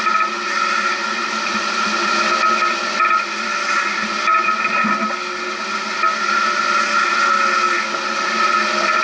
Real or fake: real